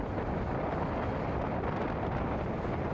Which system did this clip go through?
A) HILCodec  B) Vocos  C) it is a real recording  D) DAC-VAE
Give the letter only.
C